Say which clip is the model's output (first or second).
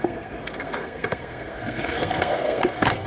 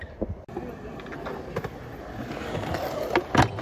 first